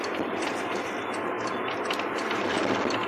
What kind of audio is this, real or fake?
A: fake